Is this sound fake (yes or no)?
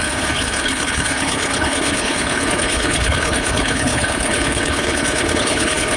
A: yes